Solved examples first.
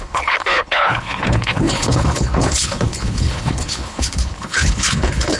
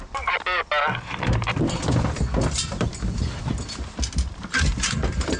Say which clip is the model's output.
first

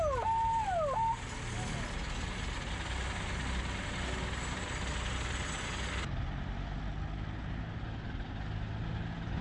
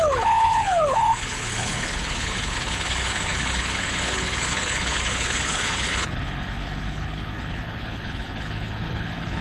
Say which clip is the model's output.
second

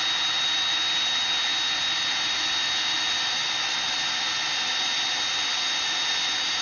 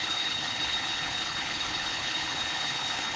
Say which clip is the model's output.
second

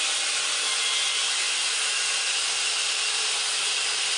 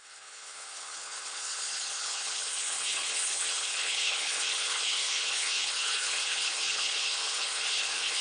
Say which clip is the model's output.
second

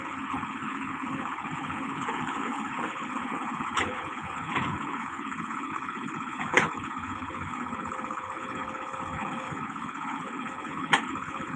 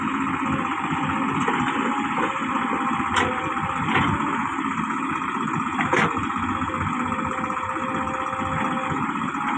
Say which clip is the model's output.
first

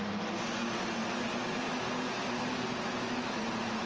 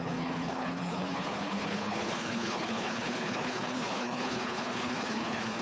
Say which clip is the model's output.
second